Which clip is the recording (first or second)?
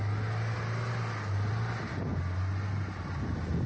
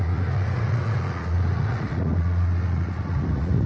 first